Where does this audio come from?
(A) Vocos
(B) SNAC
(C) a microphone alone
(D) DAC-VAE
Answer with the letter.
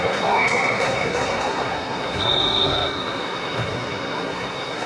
B